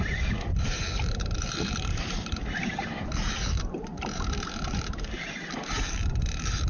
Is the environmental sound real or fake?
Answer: fake